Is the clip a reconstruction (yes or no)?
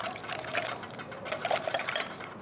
yes